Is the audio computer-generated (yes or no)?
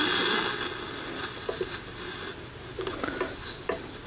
no